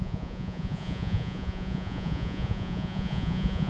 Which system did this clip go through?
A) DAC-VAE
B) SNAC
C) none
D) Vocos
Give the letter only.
D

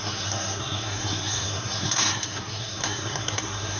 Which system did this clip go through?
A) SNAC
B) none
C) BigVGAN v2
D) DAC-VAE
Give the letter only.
A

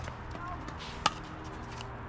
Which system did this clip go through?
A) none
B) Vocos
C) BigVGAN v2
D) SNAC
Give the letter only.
A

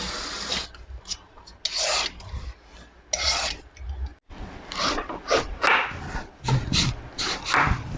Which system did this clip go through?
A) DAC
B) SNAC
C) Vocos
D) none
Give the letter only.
D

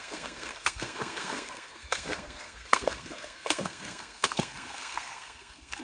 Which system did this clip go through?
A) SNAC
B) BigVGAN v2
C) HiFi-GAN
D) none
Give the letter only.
A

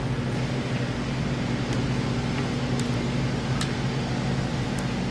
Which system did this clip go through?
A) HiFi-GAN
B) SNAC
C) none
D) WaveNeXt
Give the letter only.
C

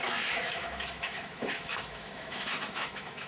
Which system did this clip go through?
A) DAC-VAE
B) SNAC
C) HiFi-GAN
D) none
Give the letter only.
A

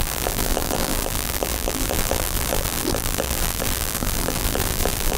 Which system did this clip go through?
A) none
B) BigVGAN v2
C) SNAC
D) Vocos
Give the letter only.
B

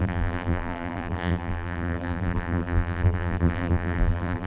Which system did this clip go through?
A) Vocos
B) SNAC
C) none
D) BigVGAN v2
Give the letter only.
D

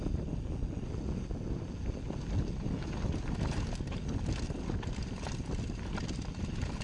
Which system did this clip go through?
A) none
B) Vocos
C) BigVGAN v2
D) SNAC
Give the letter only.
A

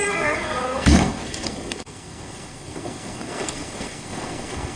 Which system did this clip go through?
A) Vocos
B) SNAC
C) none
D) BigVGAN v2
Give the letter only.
B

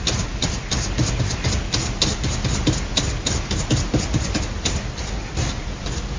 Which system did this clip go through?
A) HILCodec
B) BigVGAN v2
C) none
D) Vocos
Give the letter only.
C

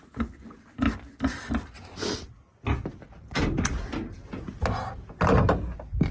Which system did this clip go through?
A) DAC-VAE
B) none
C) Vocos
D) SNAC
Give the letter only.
B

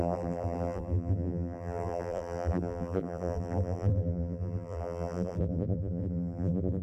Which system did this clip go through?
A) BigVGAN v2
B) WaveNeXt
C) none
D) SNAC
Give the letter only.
A